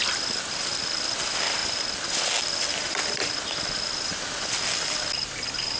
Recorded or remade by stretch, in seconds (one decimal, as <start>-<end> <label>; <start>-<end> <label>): 0.0-5.8 recorded